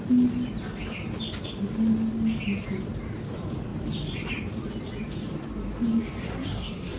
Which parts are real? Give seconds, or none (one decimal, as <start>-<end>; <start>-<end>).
0.0-6.2